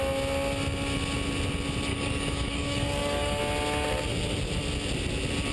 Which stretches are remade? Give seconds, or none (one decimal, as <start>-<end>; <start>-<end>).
1.9-3.4